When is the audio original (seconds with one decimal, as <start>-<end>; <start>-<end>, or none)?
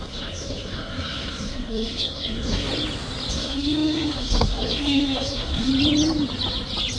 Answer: 2.7-3.3; 5.7-7.0